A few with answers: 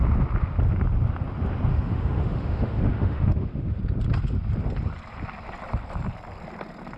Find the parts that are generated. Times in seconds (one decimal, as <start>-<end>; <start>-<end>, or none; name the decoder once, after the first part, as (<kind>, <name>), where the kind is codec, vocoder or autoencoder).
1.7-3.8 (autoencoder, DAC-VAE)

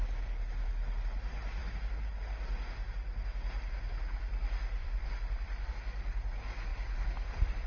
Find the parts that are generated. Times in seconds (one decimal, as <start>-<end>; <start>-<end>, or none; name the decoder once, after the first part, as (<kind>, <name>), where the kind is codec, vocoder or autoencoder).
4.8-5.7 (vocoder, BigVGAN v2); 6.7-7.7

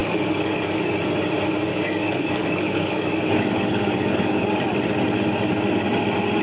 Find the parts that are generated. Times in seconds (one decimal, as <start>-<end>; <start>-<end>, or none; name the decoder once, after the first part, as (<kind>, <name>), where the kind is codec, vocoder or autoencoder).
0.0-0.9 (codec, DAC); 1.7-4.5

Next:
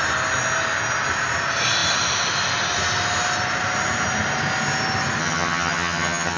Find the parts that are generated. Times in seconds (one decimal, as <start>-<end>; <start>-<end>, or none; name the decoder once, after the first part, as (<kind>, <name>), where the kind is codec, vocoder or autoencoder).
5.2-6.4 (vocoder, HiFi-GAN)